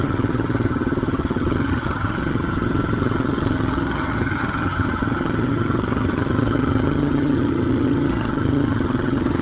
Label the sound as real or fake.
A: fake